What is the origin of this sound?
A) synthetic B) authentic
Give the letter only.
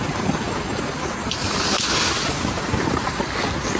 B